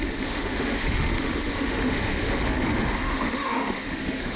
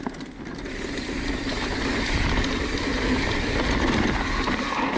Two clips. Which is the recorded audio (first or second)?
second